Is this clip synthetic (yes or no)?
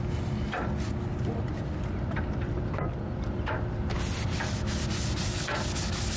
no